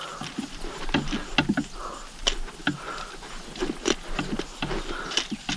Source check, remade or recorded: recorded